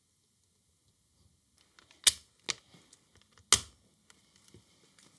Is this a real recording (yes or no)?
yes